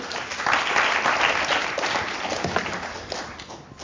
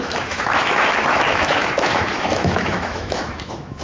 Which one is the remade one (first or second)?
second